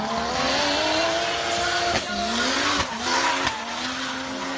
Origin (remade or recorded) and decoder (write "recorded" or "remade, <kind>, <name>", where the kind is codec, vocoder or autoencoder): recorded